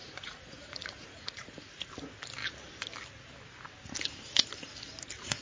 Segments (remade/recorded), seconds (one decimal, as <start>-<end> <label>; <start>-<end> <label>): 0.0-1.9 remade; 1.9-5.4 recorded